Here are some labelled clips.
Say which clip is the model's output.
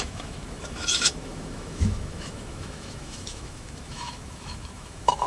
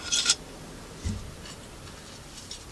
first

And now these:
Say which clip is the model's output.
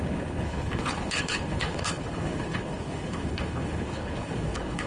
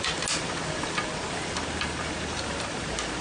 first